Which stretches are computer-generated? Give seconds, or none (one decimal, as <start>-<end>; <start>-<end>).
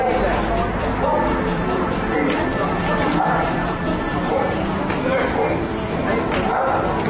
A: 0.0-6.0